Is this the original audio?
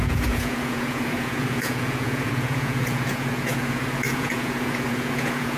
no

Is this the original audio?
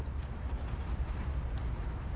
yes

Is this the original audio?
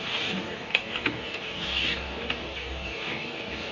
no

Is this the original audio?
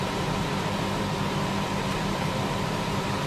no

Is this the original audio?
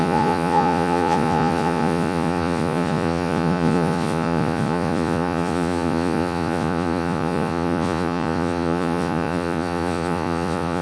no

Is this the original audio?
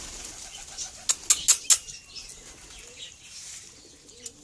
yes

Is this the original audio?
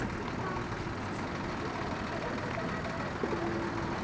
yes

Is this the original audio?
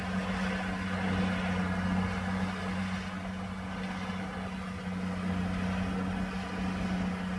yes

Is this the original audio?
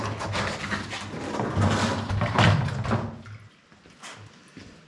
yes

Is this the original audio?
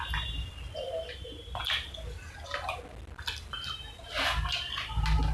yes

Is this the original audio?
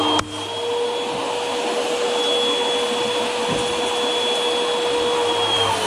yes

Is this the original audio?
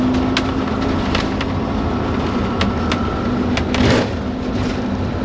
yes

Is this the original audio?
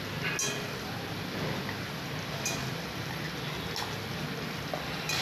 yes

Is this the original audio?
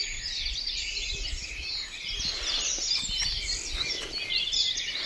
yes